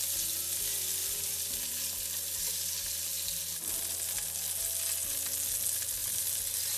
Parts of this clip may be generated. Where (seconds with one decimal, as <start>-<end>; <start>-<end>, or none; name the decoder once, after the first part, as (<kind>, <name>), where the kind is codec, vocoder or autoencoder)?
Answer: 1.0-2.0 (vocoder, BigVGAN v2); 6.0-6.8